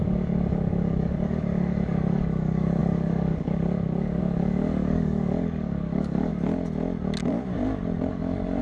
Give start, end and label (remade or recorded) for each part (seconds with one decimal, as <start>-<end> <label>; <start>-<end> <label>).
0.0-6.3 remade; 6.3-8.1 recorded; 8.1-8.6 remade

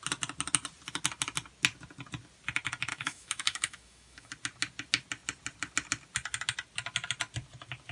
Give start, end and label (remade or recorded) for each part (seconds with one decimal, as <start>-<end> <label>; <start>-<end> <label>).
0.0-2.9 recorded; 2.9-4.3 remade; 4.3-7.9 recorded

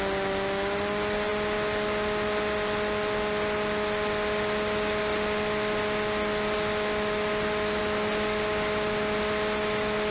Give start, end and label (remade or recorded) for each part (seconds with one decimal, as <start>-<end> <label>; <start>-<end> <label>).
0.0-10.1 recorded

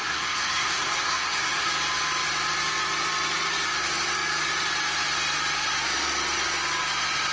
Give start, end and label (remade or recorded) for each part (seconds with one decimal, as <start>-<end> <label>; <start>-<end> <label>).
0.0-1.7 remade; 1.7-7.3 recorded

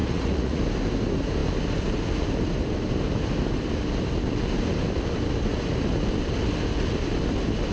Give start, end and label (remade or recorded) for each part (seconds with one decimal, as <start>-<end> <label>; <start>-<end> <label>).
0.0-0.6 remade; 0.6-7.7 recorded

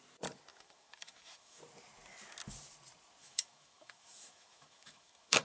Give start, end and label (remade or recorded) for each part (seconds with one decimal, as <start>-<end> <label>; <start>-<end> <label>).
0.0-0.5 recorded; 0.5-1.6 remade; 1.6-3.2 recorded; 3.2-5.4 remade

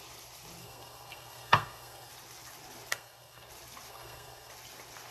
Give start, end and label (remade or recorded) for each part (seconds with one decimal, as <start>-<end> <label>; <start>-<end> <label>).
0.0-0.6 recorded; 0.6-2.1 remade; 2.1-2.9 recorded; 2.9-3.5 remade; 3.5-3.9 recorded; 3.9-4.5 remade; 4.5-5.1 recorded